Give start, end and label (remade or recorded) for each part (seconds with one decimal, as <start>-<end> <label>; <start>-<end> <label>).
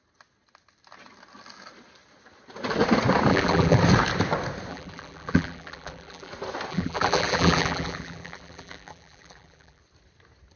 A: 0.0-3.3 recorded; 3.3-3.8 remade; 3.8-4.7 recorded; 4.7-6.3 remade; 6.3-6.7 recorded; 6.7-9.8 remade; 9.8-10.6 recorded